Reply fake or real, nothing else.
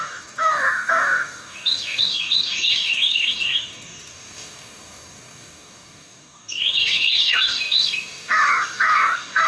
fake